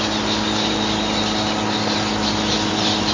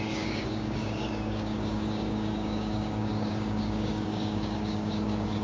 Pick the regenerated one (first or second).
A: second